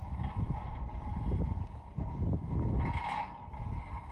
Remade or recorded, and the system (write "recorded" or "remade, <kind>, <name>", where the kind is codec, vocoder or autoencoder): remade, vocoder, BigVGAN v2